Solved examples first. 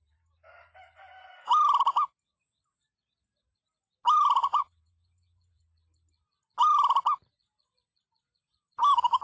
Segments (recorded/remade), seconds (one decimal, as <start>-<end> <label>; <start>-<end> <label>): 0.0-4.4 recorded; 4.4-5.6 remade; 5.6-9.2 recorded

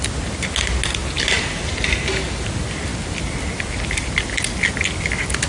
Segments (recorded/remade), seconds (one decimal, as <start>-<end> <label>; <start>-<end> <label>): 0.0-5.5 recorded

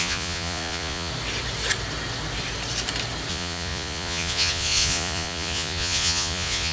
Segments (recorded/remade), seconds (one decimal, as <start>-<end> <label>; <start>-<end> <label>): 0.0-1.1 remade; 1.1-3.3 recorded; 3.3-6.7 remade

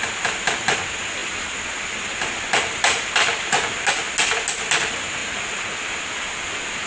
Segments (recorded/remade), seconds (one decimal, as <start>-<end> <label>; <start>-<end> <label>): 0.0-5.2 recorded; 5.2-5.8 remade; 5.8-6.9 recorded